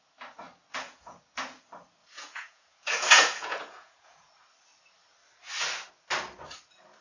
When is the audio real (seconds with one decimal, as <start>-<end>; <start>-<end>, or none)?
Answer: 0.0-0.7; 1.2-2.0; 4.3-7.0

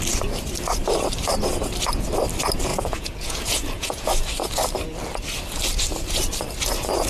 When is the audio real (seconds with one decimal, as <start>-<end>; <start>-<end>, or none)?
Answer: 0.0-2.7; 4.1-7.1

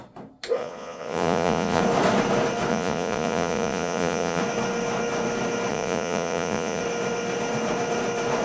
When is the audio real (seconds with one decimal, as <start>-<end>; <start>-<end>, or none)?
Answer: 0.0-0.6; 1.8-2.7; 4.4-5.7; 6.8-8.4

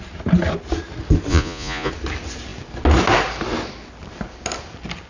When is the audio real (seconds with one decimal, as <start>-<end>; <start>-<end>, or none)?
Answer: 0.0-1.3; 1.9-5.1

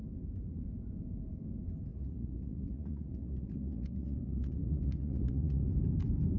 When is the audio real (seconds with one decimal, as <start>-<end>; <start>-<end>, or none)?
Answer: 0.0-1.9; 5.7-6.4

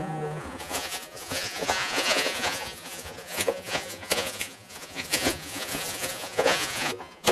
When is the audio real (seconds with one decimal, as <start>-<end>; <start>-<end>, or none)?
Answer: none

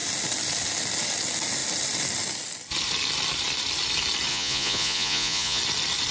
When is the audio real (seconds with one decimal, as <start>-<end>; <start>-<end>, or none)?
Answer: 0.0-4.3; 5.6-6.1

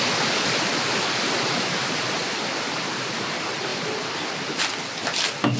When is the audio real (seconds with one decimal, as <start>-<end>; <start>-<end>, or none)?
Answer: 0.0-5.6